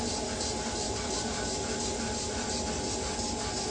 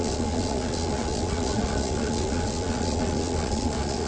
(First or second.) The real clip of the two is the first